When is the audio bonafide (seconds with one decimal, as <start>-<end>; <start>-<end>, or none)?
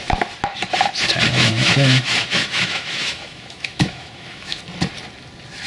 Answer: 0.0-1.3; 4.6-5.7